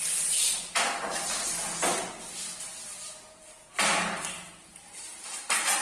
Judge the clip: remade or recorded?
recorded